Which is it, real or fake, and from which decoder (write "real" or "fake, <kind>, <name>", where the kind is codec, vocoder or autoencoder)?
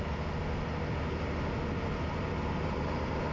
real